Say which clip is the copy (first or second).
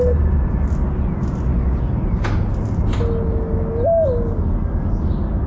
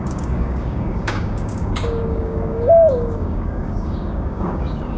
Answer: second